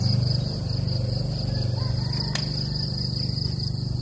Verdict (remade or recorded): recorded